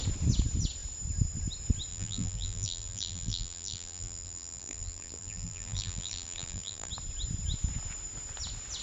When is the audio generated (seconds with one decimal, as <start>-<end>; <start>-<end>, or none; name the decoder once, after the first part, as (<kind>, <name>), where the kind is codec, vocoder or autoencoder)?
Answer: 1.9-6.9 (vocoder, BigVGAN v2)